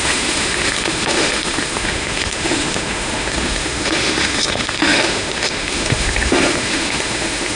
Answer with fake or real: fake